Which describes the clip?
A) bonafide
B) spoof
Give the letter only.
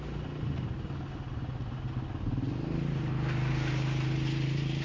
A